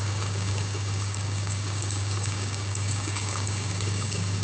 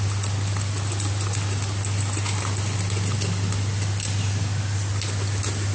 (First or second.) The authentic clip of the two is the second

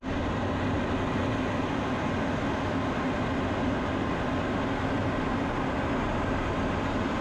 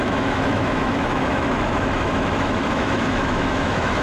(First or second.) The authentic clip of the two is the first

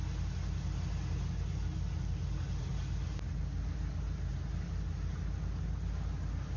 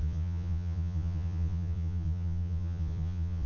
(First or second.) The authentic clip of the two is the first